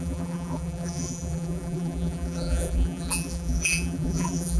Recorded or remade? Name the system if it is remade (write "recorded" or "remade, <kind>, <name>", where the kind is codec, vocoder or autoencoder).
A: remade, vocoder, BigVGAN v2